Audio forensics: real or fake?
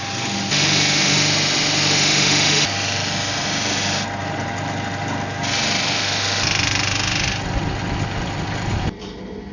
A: real